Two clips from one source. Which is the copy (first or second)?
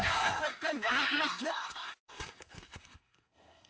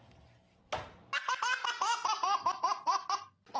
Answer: first